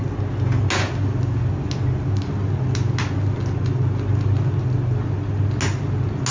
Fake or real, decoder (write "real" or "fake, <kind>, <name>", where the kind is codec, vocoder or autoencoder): real